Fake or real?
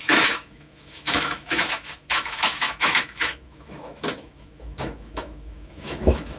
fake